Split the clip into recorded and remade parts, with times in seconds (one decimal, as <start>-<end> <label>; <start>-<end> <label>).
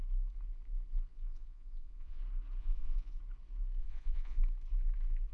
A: 0.0-1.1 recorded; 1.1-2.2 remade; 2.2-2.6 recorded; 2.6-3.2 remade; 3.2-3.8 recorded; 3.8-4.4 remade; 4.4-5.3 recorded